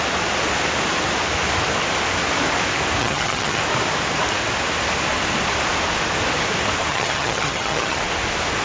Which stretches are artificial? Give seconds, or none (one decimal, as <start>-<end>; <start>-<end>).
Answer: 3.0-3.6; 6.9-8.0

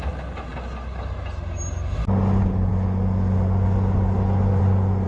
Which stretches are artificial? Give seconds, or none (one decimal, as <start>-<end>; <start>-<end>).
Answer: none

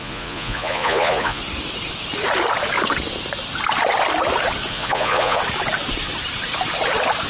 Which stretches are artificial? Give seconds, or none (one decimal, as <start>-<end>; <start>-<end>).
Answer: 0.0-1.4; 4.7-5.4

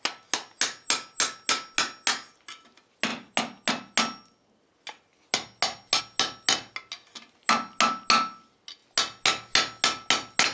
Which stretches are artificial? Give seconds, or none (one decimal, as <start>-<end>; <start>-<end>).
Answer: none

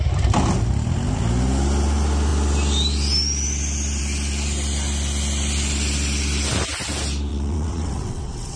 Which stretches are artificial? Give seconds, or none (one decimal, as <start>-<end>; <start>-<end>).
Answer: 7.3-8.6

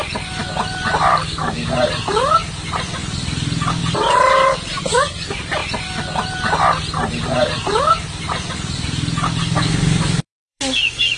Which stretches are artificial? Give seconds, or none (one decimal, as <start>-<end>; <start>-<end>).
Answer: 1.1-1.7; 9.4-11.2

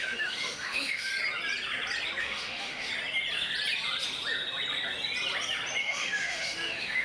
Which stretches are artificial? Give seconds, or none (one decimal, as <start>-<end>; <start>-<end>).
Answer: 0.0-1.1; 2.2-2.9; 5.8-7.0

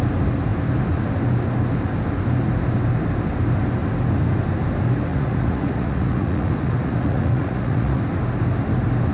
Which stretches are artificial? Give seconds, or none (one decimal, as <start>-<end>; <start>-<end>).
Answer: 5.1-8.0